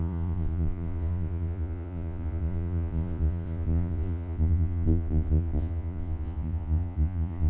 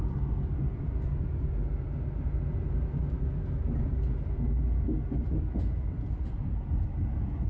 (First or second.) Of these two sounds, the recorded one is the second